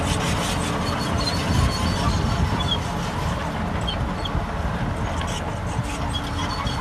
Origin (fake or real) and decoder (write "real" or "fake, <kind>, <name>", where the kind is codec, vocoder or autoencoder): real